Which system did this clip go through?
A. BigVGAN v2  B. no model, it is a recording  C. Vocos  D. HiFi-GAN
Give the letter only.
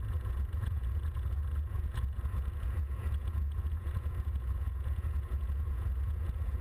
C